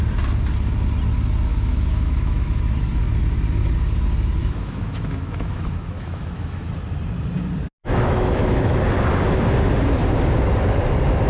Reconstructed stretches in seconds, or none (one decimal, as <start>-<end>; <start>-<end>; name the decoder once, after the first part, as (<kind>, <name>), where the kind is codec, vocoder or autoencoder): 1.5-2.6 (autoencoder, DAC-VAE); 4.4-6.7; 7.8-8.8